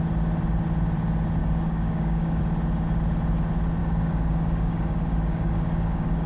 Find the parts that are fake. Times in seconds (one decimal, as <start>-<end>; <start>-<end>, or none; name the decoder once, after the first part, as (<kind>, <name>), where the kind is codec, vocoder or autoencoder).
1.4-2.4 (codec, DAC); 3.8-6.3